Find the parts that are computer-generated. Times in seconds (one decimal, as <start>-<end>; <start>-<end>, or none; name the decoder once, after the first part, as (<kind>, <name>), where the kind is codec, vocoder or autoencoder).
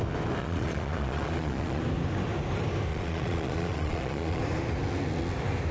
0.4-1.8 (vocoder, Vocos); 2.9-4.4